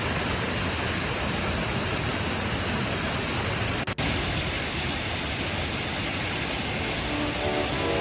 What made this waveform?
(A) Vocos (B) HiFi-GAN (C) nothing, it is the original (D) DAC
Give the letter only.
C